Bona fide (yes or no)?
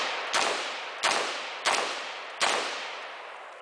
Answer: yes